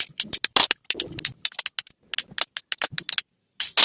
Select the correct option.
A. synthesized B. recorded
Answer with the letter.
B